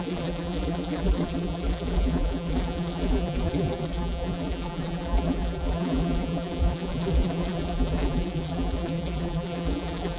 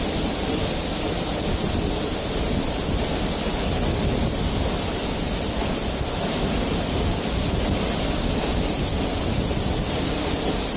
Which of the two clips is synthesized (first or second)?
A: first